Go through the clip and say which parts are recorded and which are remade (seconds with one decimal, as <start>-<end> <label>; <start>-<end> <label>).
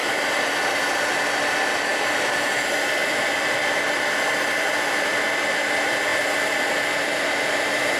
0.0-0.7 remade; 0.7-3.0 recorded; 3.0-5.1 remade; 5.1-8.0 recorded